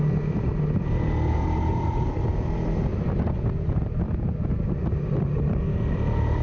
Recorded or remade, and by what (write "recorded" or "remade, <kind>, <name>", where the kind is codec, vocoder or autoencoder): remade, vocoder, BigVGAN v2